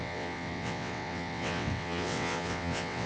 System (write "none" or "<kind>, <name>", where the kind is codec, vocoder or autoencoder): vocoder, WaveNeXt